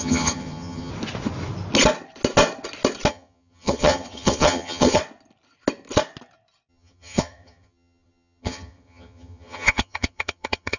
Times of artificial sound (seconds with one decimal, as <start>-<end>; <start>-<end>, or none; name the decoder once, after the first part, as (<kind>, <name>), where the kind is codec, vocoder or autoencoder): 0.0-0.9 (vocoder, HiFi-GAN); 3.1-5.0; 6.7-10.8